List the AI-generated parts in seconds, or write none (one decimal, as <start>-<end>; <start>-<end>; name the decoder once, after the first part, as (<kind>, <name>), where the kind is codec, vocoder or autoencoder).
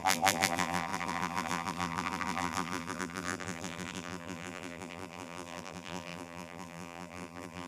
0.0-7.7 (vocoder, BigVGAN v2)